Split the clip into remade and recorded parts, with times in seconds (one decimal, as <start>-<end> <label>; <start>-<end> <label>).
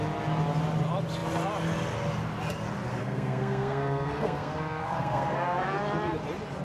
0.0-3.0 recorded; 3.0-5.8 remade; 5.8-6.6 recorded